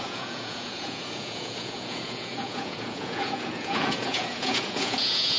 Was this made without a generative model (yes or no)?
no